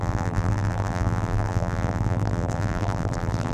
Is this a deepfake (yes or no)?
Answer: yes